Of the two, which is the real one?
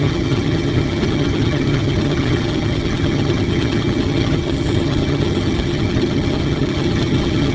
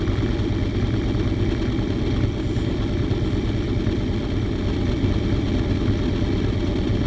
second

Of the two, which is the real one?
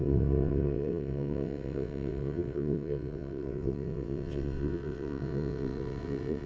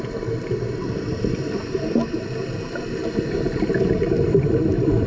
second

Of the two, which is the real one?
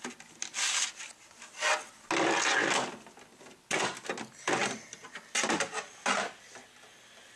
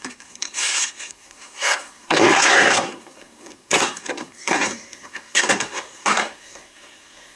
first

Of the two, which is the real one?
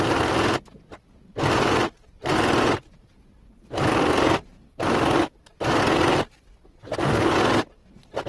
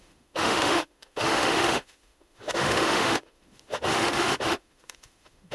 first